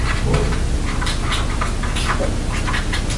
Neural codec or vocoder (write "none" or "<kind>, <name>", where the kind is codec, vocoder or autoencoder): none